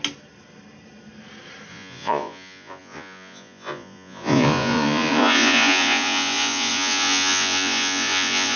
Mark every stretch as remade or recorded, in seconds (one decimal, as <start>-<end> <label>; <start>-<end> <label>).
0.0-1.7 recorded; 1.7-8.6 remade